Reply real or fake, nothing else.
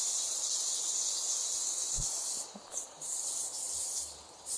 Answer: real